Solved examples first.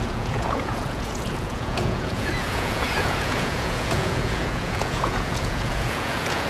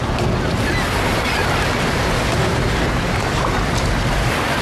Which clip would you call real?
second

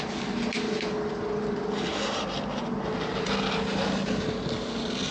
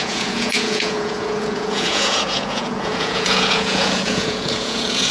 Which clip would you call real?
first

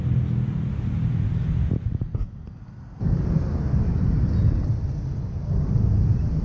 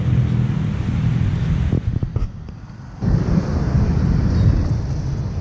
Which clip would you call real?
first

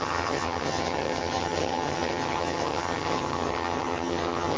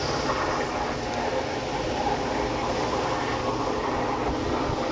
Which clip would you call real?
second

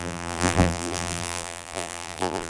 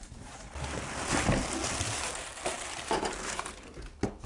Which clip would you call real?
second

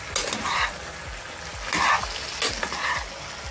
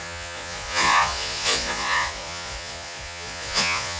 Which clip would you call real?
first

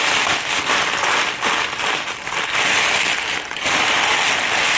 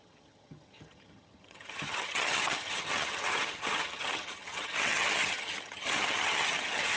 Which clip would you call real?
first